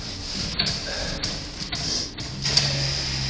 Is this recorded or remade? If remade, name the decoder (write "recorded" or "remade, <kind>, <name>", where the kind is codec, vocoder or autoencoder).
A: recorded